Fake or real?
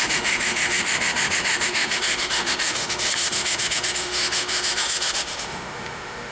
fake